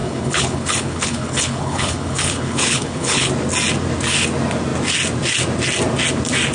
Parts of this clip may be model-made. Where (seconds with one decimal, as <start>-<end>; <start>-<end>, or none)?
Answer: 0.0-3.3